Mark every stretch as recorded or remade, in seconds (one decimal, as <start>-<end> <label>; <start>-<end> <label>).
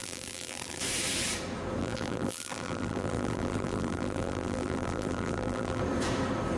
0.0-0.8 remade; 0.8-1.8 recorded; 1.8-5.8 remade; 5.8-6.6 recorded